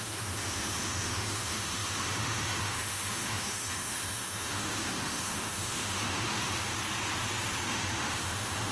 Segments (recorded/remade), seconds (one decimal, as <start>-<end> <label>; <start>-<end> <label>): 0.0-6.7 remade; 6.7-7.7 recorded; 7.7-8.7 remade